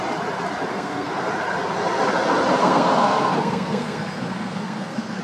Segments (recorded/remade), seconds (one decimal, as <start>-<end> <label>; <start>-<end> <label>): 0.0-0.7 recorded; 0.7-1.3 remade; 1.3-2.6 recorded; 2.6-5.2 remade